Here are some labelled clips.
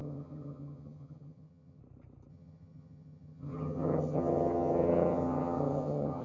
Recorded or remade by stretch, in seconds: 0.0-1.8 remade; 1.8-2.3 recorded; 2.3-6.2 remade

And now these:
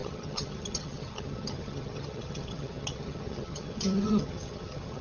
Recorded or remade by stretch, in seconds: 0.0-5.0 remade

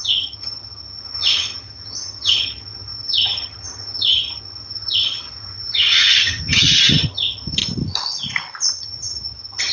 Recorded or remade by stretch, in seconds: 0.0-7.6 remade; 7.6-8.7 recorded; 8.7-9.7 remade

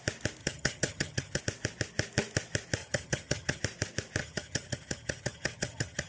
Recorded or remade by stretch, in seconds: 0.0-0.4 recorded; 0.4-1.4 remade; 1.4-2.8 recorded; 2.8-3.6 remade; 3.6-4.2 recorded; 4.2-6.1 remade

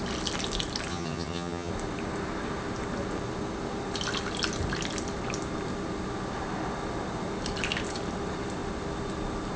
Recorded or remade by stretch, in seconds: 0.0-0.9 recorded; 0.9-1.7 remade; 1.7-9.6 recorded